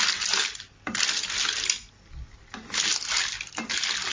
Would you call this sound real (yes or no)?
yes